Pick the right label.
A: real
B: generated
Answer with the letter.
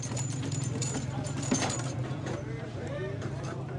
B